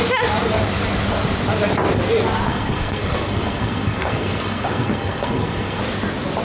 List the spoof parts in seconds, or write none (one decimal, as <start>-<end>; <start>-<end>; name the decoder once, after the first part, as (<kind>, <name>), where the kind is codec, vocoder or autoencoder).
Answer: 2.5-5.8 (codec, SNAC)